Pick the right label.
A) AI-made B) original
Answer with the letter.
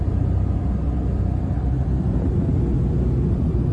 B